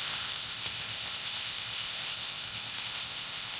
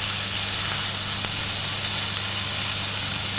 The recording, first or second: second